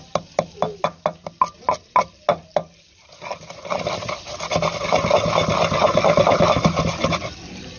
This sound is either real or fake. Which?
real